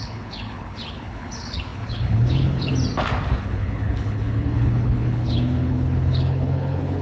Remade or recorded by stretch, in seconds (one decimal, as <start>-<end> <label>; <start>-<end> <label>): 0.0-2.7 remade; 2.7-3.4 recorded; 3.4-7.0 remade